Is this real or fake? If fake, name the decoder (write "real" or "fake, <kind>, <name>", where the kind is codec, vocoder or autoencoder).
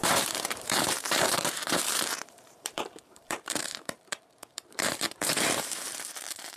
fake, vocoder, BigVGAN v2